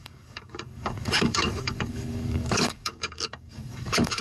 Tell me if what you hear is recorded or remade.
remade